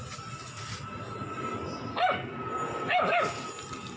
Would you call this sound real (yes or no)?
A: yes